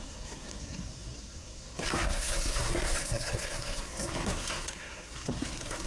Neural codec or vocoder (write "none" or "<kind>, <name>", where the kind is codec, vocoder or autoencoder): codec, SNAC